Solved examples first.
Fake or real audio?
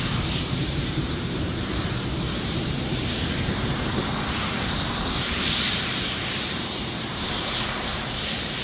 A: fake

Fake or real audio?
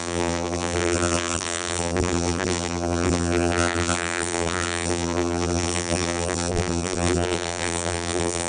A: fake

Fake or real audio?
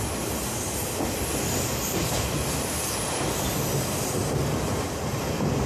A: real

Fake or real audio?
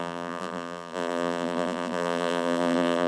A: fake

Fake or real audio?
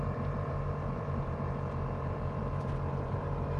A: fake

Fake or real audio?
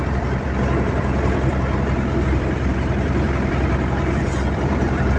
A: fake